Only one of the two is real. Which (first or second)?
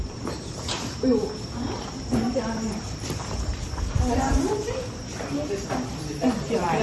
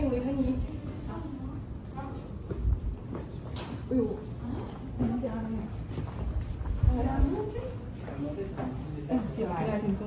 second